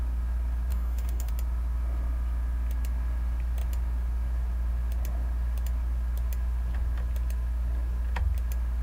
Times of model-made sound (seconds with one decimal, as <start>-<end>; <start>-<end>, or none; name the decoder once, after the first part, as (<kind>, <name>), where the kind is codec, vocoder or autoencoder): 0.7-1.3 (codec, DAC)